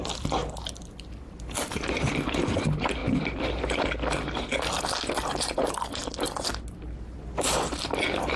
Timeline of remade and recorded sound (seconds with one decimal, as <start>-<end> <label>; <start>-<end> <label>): 0.0-0.4 remade; 0.4-1.1 recorded; 1.1-3.0 remade; 3.0-7.8 recorded; 7.8-8.4 remade